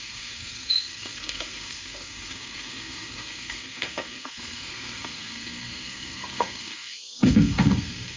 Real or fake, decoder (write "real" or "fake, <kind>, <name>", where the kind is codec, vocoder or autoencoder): fake, codec, SNAC